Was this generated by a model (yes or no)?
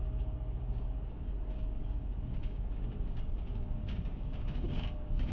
yes